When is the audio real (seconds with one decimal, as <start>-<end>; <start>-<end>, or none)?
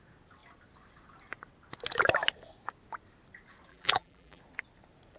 0.0-3.7; 4.4-5.2